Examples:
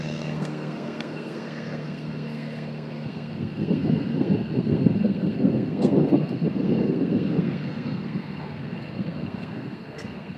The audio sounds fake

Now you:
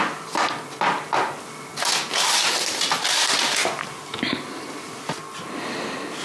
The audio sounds real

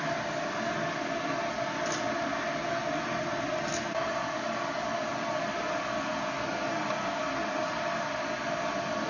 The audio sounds real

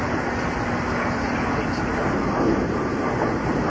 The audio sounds real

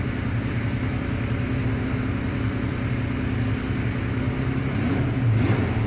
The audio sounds real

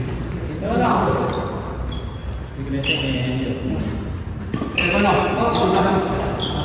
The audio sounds real